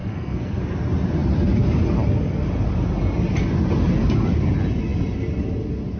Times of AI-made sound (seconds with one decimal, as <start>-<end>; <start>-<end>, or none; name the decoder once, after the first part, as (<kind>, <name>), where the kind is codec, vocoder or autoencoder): 0.0-0.6 (codec, SNAC)